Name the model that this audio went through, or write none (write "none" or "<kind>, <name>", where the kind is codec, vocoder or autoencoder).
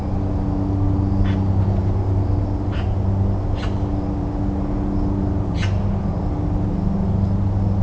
none